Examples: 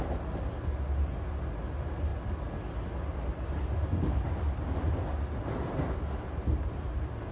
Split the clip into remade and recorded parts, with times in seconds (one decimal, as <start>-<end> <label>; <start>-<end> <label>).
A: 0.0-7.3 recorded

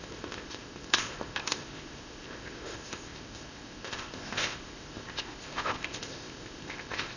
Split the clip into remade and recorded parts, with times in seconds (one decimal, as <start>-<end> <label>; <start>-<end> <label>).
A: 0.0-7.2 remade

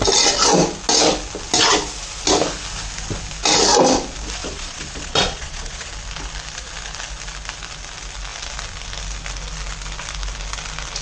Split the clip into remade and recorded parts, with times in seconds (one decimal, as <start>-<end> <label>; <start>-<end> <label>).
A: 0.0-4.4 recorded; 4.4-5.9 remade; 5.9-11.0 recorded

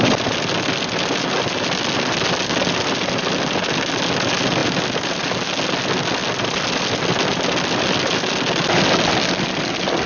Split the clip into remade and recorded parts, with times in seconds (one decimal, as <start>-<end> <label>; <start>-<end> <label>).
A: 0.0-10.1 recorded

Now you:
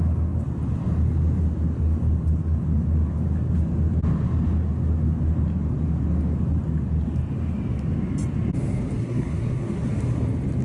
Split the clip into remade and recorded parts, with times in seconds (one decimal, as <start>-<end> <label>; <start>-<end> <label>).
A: 0.0-9.0 recorded; 9.0-9.9 remade; 9.9-10.6 recorded

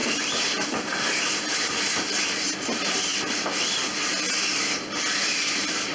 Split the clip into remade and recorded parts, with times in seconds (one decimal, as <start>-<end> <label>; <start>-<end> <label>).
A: 0.0-5.9 recorded

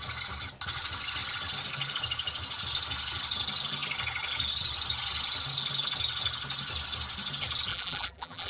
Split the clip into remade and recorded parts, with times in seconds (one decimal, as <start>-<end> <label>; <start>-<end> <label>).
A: 0.0-7.7 recorded; 7.7-8.5 remade

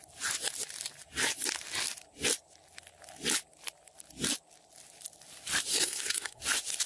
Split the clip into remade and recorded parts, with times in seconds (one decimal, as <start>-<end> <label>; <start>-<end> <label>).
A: 0.0-5.7 recorded; 5.7-6.4 remade; 6.4-6.9 recorded